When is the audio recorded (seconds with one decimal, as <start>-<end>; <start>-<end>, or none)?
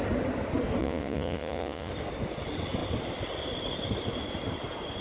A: 0.0-0.8; 1.9-5.0